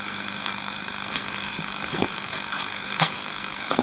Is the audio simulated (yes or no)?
yes